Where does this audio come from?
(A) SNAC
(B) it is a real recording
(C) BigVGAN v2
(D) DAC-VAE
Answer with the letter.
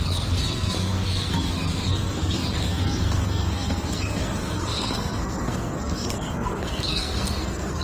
A